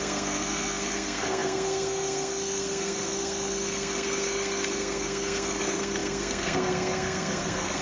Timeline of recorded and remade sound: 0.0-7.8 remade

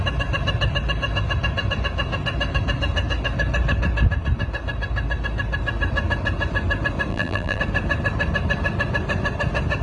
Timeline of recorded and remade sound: 0.0-7.1 recorded; 7.1-7.6 remade; 7.6-9.8 recorded

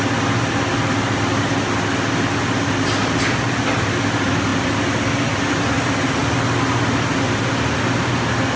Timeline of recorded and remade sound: 0.0-8.6 recorded

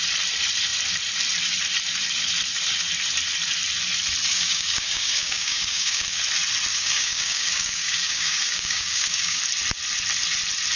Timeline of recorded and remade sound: 0.0-4.3 recorded; 4.3-6.2 remade; 6.2-6.7 recorded; 6.7-9.4 remade; 9.4-10.8 recorded

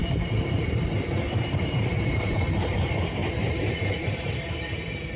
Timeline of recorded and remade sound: 0.0-2.8 remade; 2.8-3.2 recorded; 3.2-5.2 remade

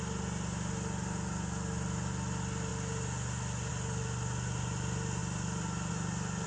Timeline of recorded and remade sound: 0.0-6.5 recorded